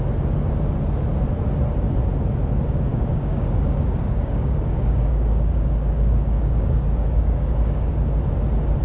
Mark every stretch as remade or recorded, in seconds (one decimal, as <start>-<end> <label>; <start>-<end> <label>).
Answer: 0.0-2.9 recorded; 2.9-7.9 remade; 7.9-8.8 recorded